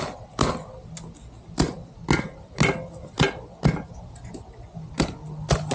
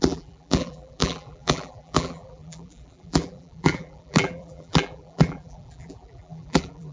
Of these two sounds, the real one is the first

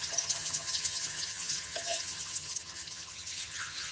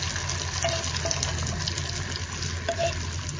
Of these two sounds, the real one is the second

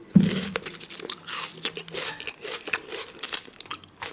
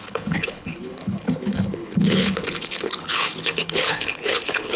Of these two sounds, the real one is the first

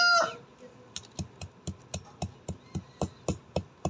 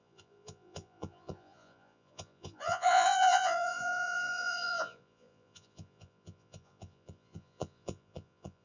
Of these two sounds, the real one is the first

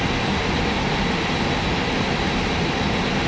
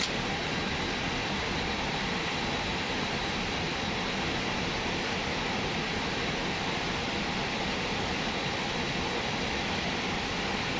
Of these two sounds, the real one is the first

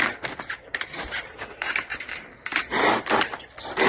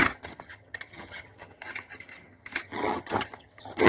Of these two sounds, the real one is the first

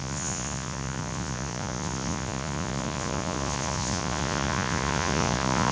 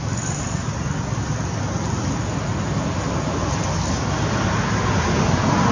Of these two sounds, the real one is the second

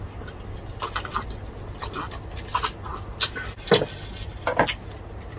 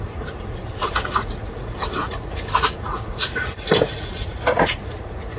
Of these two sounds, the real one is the first